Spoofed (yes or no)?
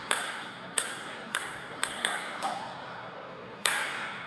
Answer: yes